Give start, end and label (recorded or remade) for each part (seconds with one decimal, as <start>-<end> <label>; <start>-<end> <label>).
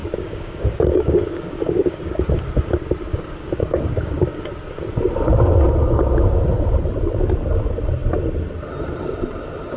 0.0-2.3 remade; 2.3-3.1 recorded; 3.1-4.4 remade; 4.4-9.8 recorded